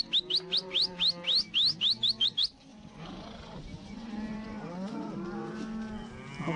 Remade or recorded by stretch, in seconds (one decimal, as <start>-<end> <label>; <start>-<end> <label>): 0.0-2.7 recorded; 2.7-5.1 remade; 5.1-6.6 recorded